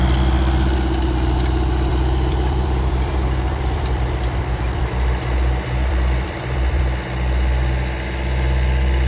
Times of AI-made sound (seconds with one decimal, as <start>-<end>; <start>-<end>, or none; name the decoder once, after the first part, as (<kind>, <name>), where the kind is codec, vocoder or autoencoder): 1.9-4.8 (vocoder, BigVGAN v2); 5.8-6.8